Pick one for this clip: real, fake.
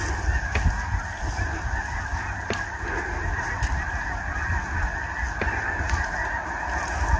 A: real